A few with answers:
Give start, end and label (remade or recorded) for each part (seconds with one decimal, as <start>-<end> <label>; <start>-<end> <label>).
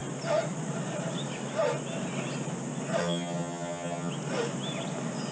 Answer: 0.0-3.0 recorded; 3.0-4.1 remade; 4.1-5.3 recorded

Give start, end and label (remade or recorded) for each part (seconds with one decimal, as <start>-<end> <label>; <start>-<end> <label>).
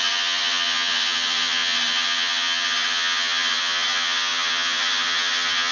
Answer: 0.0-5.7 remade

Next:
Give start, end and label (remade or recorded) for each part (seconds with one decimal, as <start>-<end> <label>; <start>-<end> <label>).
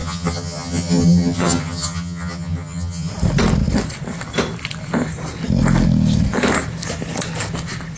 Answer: 0.0-3.1 remade; 3.1-8.0 recorded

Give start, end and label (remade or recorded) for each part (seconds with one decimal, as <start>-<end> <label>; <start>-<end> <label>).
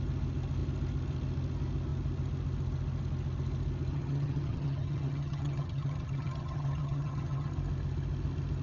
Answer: 0.0-3.9 recorded; 3.9-7.5 remade; 7.5-8.6 recorded